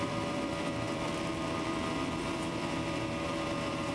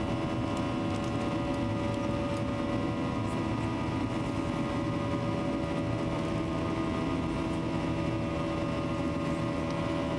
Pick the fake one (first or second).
first